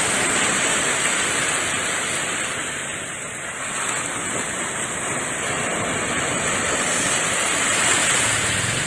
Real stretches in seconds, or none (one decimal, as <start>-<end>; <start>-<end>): 0.0-8.0